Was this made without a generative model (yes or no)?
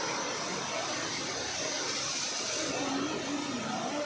yes